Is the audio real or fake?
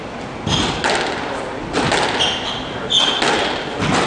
real